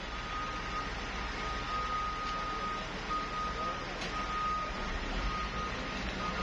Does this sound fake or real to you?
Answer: real